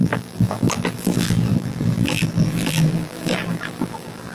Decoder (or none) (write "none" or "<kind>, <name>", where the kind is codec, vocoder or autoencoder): vocoder, BigVGAN v2